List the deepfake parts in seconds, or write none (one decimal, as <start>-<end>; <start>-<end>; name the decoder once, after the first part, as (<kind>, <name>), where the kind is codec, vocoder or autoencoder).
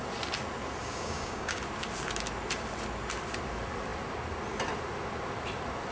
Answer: 0.8-1.6 (codec, DAC)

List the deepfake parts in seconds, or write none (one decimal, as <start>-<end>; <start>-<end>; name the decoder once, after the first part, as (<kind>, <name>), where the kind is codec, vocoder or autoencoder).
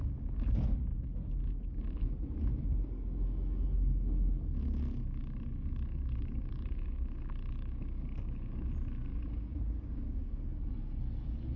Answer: 5.2-8.7 (codec, DAC); 9.1-10.4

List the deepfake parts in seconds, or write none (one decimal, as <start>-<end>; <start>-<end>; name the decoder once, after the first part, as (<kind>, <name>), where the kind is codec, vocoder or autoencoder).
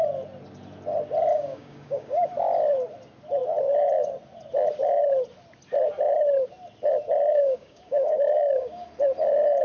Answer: 1.3-2.3 (codec, DAC); 7.3-8.9